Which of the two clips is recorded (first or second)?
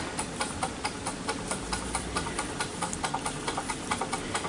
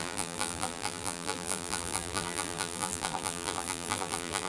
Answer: first